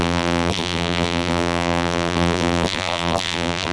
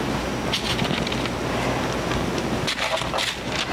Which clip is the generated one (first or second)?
first